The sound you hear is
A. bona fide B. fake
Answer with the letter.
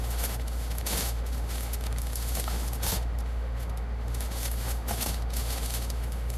B